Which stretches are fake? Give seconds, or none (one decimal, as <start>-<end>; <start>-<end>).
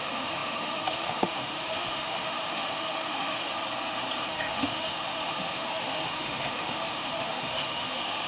0.0-3.5; 4.3-8.3